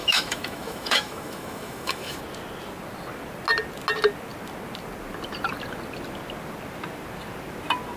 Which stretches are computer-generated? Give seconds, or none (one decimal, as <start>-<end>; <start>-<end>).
0.0-2.2